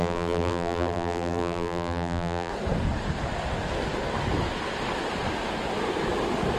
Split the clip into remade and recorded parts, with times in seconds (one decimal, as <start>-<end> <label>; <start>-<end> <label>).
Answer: 0.0-2.5 remade; 2.5-6.6 recorded